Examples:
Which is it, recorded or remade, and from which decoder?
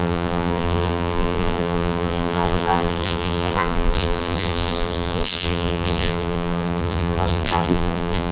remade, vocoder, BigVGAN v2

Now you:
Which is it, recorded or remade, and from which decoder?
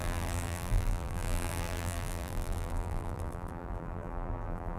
remade, vocoder, BigVGAN v2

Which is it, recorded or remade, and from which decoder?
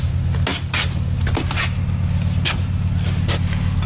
recorded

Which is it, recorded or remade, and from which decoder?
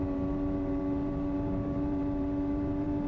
remade, vocoder, BigVGAN v2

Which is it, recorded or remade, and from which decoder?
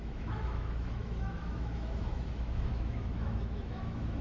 remade, autoencoder, DAC-VAE